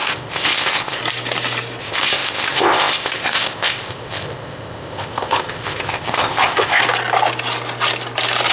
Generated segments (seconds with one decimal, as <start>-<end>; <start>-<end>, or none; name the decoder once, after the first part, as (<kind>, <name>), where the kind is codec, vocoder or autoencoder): 0.0-1.0 (codec, ZipCodec); 1.8-6.8